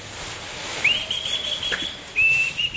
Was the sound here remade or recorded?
recorded